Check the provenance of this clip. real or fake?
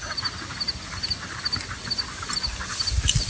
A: real